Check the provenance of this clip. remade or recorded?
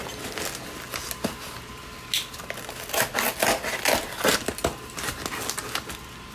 recorded